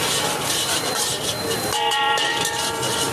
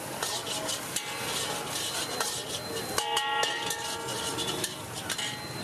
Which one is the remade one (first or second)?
first